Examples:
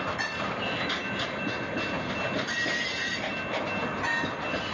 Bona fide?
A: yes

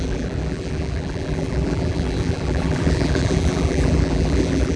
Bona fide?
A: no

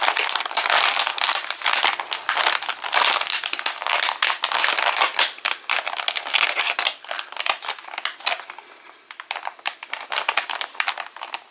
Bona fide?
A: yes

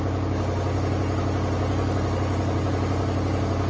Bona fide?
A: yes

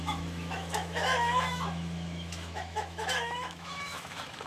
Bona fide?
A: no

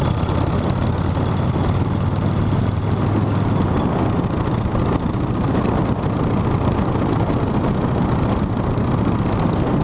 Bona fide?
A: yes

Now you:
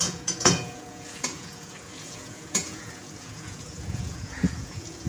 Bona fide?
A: no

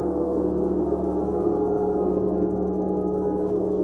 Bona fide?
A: no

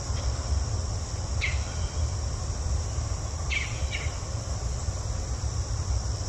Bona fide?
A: no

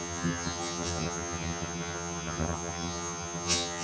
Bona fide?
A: no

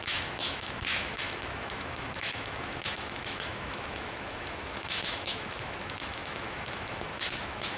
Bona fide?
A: no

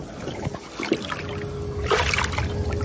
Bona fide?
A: yes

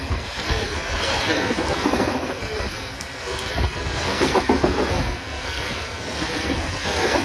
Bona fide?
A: no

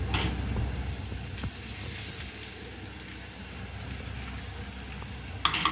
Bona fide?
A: yes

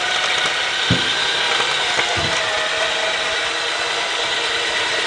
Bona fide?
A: yes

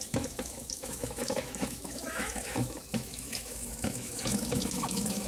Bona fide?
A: no